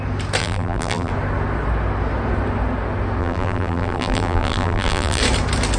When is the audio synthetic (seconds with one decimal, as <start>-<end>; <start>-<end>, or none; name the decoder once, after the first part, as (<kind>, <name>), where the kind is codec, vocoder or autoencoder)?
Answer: 0.4-1.1 (vocoder, BigVGAN v2); 3.2-5.2